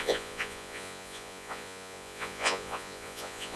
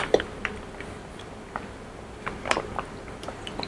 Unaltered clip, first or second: second